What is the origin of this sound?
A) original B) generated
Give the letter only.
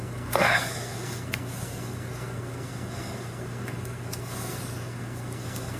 B